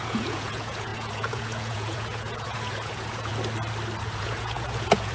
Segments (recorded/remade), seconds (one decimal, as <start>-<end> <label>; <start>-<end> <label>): 0.0-3.3 remade; 3.3-4.0 recorded; 4.0-5.1 remade